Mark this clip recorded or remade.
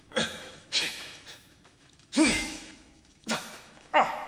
remade